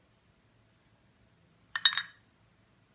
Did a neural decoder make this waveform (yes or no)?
no